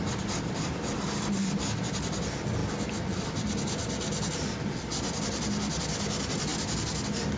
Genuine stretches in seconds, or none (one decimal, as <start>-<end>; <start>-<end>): 0.0-7.4